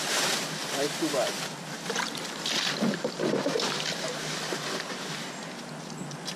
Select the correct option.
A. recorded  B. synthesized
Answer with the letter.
A